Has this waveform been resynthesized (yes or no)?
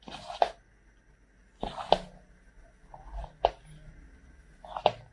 no